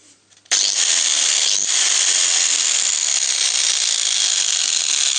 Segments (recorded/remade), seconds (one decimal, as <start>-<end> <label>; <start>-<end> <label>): 0.0-5.2 recorded

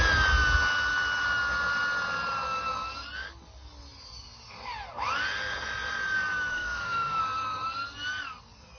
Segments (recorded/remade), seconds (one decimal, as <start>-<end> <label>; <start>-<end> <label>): 0.0-6.5 recorded; 6.5-7.2 remade; 7.2-8.8 recorded

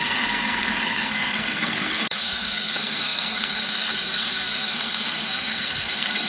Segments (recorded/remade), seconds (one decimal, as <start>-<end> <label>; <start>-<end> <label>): 0.0-6.3 remade

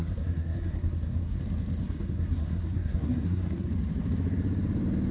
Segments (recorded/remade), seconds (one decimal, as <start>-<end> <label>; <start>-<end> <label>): 0.0-1.4 remade; 1.4-1.8 recorded; 1.8-3.7 remade; 3.7-5.1 recorded